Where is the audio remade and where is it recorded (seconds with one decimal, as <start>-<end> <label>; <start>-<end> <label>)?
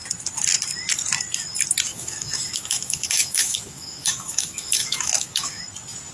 0.0-1.9 recorded; 1.9-5.6 remade; 5.6-6.1 recorded